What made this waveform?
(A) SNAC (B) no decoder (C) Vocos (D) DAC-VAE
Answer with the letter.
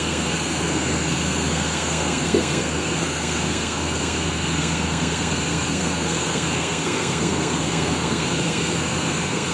A